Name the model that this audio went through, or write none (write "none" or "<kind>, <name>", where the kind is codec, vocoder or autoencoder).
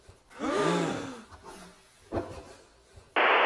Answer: none